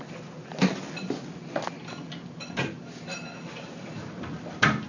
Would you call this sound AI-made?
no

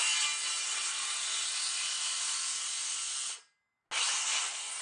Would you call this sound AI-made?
no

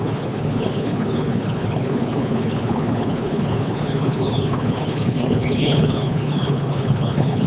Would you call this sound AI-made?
yes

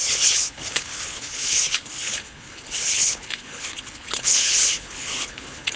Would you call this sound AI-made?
yes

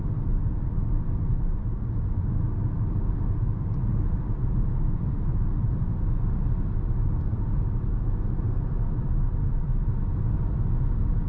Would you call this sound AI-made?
no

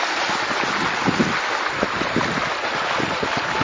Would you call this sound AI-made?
no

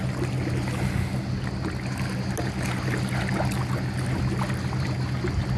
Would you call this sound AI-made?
no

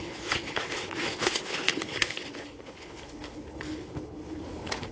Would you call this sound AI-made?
yes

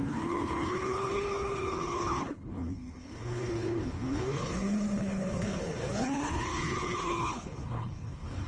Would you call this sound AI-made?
yes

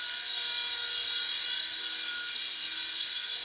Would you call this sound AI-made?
no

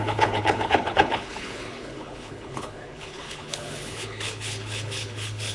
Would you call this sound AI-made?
yes